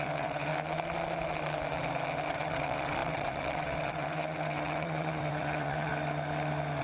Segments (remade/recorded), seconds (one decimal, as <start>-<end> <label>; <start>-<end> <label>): 0.0-0.5 remade; 0.5-2.3 recorded; 2.3-5.9 remade; 5.9-6.8 recorded